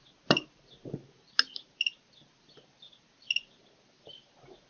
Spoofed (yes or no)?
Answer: no